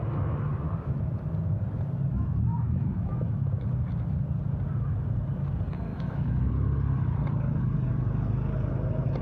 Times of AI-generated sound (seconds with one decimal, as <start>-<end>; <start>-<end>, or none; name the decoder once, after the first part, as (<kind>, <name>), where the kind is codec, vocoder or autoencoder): 2.5-3.4 (autoencoder, DAC-VAE); 5.9-6.5